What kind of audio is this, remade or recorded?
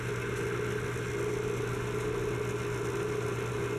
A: recorded